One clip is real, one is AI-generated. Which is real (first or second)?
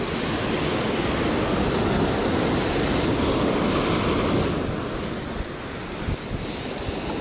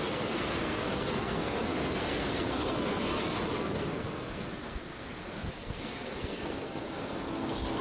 first